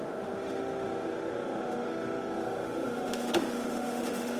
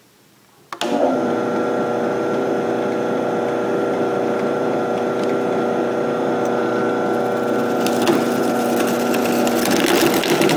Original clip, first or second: second